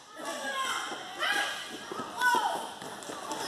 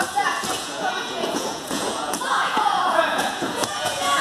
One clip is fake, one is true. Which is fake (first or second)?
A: second